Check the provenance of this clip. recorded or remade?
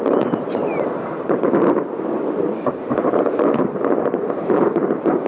remade